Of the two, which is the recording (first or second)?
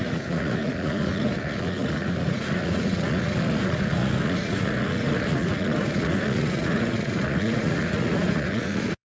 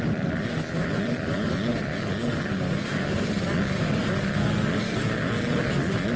second